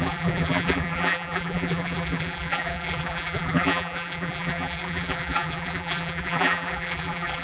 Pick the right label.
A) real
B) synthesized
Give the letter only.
B